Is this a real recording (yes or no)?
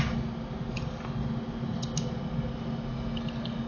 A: yes